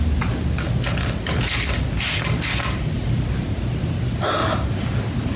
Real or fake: real